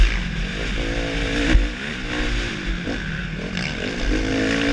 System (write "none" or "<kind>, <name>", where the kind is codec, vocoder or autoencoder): none